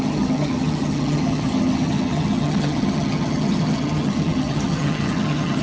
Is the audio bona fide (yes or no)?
no